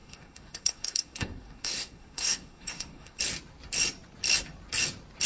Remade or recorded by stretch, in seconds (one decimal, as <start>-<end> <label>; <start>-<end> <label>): 0.0-3.2 remade; 3.2-5.3 recorded